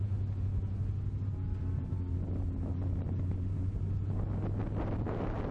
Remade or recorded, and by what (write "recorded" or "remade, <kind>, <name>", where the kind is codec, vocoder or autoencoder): recorded